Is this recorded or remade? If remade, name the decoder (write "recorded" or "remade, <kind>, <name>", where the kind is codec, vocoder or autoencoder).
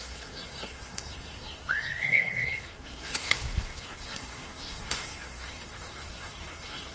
remade, codec, SNAC